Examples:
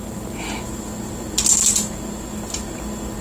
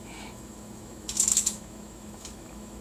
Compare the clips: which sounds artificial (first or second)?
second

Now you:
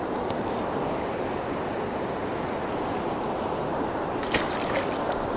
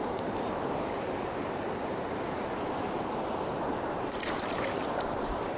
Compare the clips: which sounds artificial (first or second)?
second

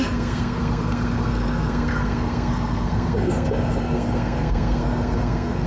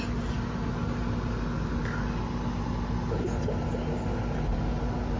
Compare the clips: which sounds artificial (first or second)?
first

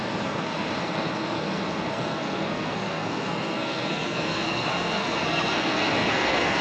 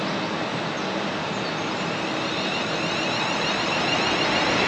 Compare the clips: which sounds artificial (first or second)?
first